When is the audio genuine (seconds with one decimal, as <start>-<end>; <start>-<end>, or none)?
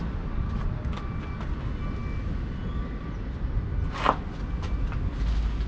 0.0-5.7